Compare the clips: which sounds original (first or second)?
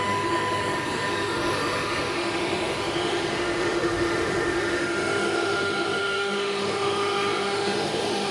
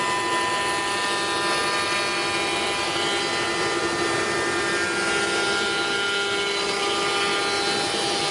second